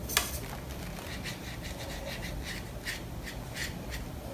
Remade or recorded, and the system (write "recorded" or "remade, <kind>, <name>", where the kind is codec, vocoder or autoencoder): recorded